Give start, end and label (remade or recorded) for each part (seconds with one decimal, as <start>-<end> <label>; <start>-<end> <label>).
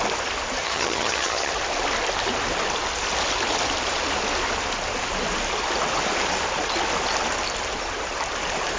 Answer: 0.0-0.6 recorded; 0.6-1.5 remade; 1.5-8.8 recorded